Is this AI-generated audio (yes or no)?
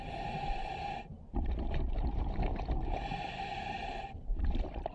yes